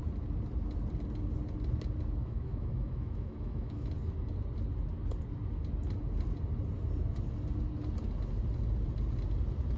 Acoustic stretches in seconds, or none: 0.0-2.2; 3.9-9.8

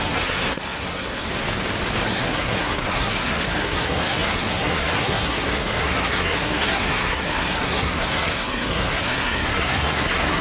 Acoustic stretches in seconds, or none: 1.2-2.0

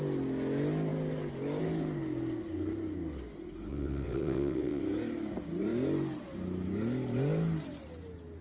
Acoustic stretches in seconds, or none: 0.0-3.7; 4.8-8.4

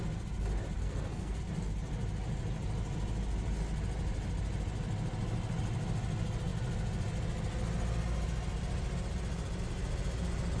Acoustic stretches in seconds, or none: 0.0-0.8; 1.4-10.6

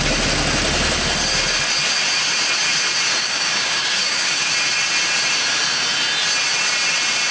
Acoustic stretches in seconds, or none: 0.0-3.2; 4.5-7.3

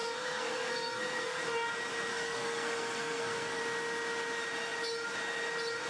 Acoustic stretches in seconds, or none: 1.4-2.1; 3.6-5.9

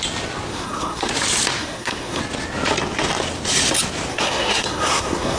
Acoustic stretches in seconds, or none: 0.0-0.5; 1.1-1.6; 2.2-4.1

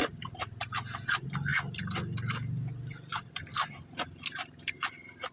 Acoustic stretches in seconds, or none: 0.0-5.3